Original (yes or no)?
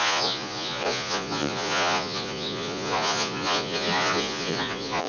no